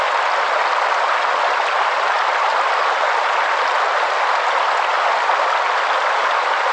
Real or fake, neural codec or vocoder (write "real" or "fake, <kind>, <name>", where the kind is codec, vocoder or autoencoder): real